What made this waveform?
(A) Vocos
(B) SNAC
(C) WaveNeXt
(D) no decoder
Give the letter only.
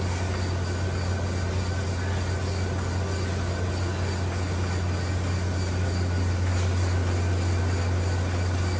D